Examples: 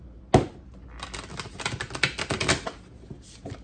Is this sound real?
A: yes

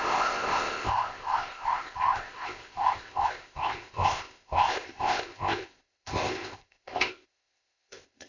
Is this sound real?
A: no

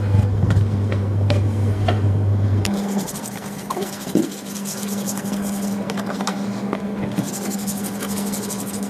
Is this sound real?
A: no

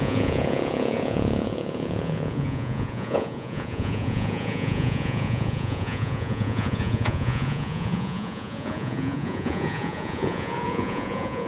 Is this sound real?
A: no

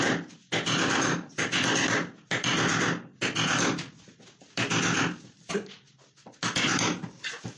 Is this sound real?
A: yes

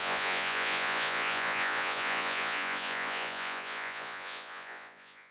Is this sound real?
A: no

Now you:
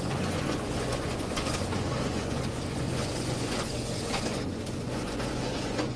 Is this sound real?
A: no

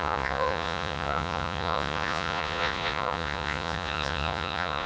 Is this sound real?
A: no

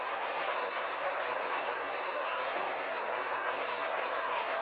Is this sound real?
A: no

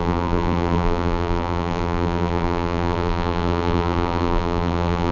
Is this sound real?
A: no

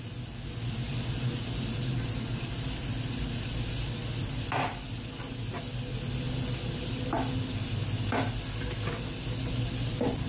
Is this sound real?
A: yes